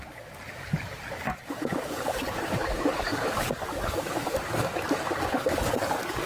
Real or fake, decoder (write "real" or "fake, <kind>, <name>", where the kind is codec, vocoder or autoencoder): fake, codec, DAC